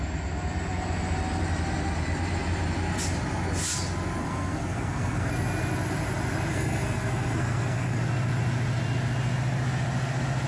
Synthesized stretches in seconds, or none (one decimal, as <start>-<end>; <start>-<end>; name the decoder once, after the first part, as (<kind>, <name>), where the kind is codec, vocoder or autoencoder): 4.2-5.3 (codec, SNAC); 6.5-8.0

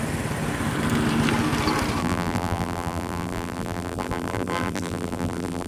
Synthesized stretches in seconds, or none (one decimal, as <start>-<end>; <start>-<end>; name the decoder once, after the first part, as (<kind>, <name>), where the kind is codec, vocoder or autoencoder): 2.0-5.7 (vocoder, BigVGAN v2)

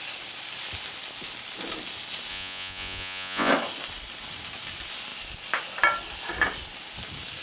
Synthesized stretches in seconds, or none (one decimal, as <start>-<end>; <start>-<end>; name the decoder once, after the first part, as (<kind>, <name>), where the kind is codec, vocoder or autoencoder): 2.3-3.5 (vocoder, Vocos)

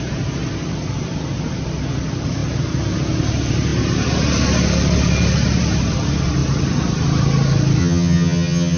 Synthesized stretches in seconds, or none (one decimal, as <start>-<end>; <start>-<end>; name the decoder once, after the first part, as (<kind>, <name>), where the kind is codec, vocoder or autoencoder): 7.8-8.8 (vocoder, HiFi-GAN)

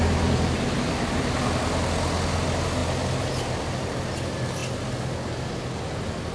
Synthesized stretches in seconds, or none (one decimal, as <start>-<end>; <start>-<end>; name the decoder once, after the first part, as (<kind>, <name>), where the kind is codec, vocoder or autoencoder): 2.8-4.1 (vocoder, BigVGAN v2)

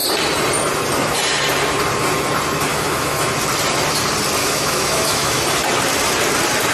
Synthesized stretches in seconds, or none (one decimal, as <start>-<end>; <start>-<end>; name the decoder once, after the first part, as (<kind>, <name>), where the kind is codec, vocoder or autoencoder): 2.7-3.3 (autoencoder, DAC-VAE); 4.4-5.4